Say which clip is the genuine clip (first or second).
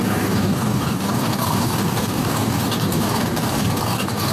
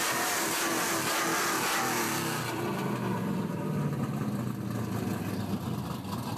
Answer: second